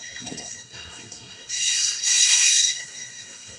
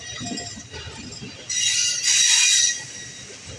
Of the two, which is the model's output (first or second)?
first